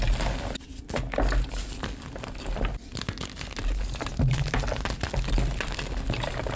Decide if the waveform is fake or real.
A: real